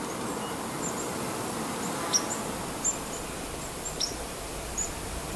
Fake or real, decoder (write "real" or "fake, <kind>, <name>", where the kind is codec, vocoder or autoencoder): real